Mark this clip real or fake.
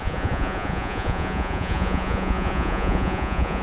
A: fake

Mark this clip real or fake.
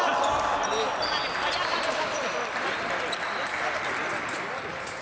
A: real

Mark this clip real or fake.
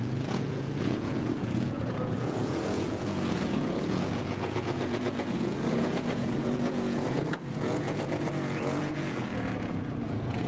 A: fake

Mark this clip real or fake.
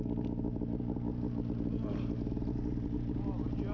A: real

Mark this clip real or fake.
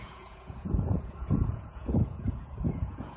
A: fake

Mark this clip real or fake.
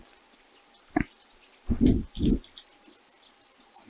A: real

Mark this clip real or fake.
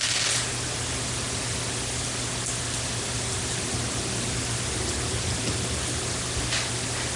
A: real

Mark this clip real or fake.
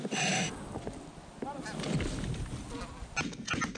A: real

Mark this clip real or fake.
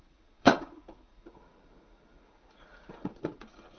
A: fake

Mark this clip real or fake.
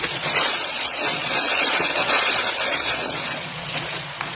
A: fake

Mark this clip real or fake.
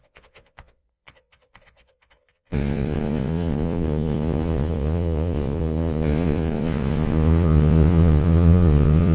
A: fake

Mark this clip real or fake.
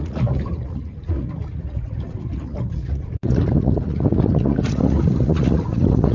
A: fake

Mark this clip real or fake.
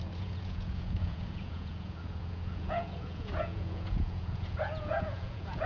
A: fake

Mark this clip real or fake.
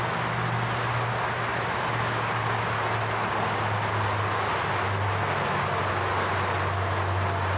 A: real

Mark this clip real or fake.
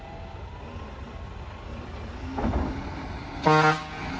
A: real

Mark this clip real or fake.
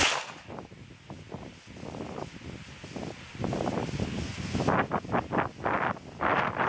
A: real